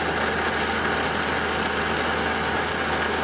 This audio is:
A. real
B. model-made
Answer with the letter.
A